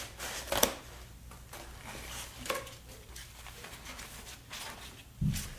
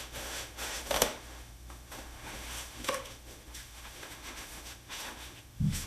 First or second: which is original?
first